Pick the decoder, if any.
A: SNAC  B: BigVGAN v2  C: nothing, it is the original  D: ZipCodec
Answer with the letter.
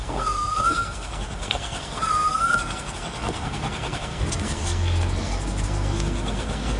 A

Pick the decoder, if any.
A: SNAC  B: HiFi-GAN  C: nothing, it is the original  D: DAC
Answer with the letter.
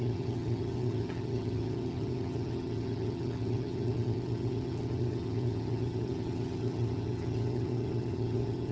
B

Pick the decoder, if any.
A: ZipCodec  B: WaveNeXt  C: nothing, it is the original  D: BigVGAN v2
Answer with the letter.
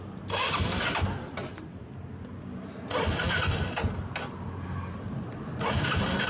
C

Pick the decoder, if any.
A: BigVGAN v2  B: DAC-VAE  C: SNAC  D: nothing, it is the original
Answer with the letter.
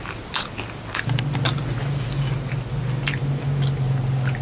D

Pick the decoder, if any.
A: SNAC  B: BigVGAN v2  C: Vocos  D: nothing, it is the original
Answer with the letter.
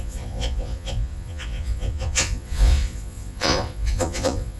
C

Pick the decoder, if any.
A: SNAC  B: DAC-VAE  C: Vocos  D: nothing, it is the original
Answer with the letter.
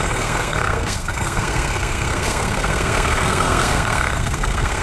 A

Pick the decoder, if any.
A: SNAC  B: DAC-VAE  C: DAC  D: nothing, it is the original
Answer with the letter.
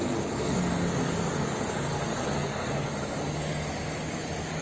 C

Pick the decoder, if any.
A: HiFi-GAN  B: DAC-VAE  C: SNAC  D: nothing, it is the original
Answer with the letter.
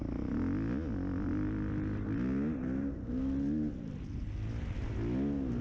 D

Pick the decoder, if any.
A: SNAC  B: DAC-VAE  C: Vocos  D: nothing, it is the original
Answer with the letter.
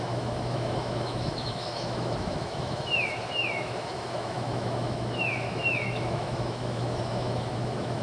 B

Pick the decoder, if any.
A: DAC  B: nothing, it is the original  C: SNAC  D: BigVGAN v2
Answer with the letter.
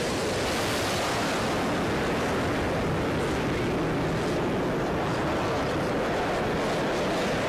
B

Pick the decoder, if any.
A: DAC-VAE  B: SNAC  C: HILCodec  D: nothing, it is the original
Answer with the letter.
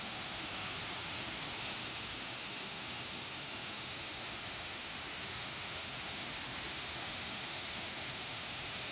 A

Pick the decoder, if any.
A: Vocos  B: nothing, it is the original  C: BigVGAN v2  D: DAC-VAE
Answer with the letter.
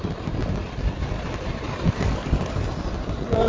B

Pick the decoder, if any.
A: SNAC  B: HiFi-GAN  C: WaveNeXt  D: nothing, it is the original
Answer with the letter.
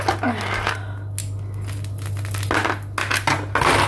D